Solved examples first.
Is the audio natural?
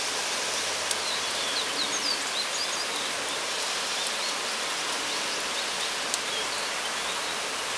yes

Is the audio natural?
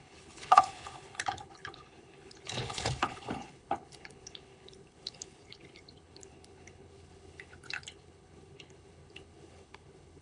no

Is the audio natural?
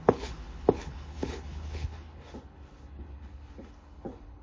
no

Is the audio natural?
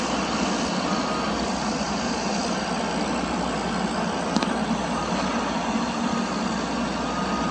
yes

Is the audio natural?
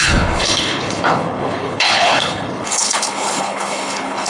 no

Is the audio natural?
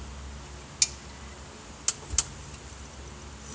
yes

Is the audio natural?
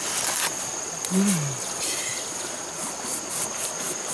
yes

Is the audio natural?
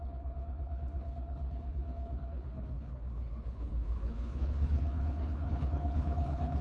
no